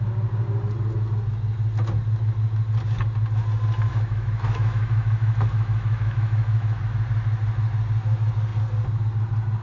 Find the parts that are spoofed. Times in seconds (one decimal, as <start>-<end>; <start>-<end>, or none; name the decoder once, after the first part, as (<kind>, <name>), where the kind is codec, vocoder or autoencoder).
3.9-6.8 (autoencoder, DAC-VAE)